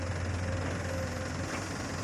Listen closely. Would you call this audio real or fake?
real